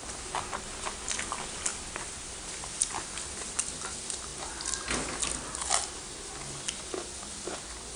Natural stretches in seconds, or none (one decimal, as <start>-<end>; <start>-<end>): 0.0-8.0